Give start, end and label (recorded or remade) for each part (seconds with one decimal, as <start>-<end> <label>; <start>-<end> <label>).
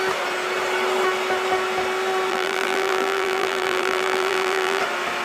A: 0.0-2.3 recorded; 2.3-4.8 remade; 4.8-5.2 recorded